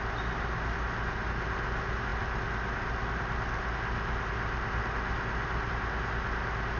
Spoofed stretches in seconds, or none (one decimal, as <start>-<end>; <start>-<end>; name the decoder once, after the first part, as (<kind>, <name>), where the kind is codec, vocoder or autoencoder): none